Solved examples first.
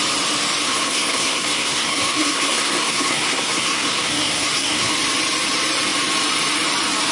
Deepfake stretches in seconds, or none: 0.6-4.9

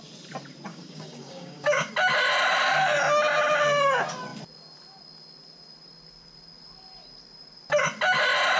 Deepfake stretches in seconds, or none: 0.7-1.9

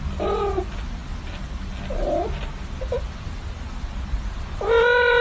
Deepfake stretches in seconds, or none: none

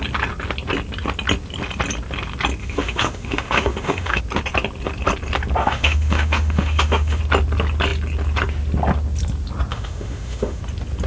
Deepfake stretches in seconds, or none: 2.6-4.2; 5.6-7.2; 9.7-10.6

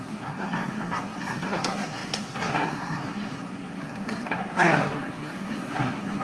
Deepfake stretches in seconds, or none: 0.0-6.2